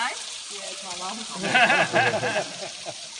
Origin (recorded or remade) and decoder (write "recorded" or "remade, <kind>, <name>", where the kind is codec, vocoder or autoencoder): recorded